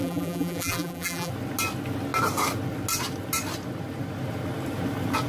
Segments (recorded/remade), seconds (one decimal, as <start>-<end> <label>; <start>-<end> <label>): 0.0-1.3 remade; 1.3-5.3 recorded